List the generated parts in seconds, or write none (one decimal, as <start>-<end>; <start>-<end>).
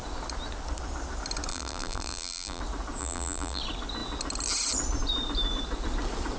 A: 1.5-2.6; 3.0-3.6